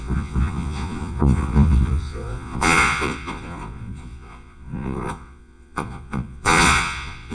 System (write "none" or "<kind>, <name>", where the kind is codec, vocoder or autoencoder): vocoder, Vocos